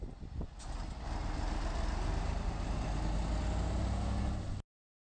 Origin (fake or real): real